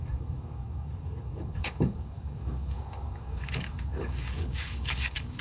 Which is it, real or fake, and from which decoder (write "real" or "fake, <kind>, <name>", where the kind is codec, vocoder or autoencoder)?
fake, codec, DAC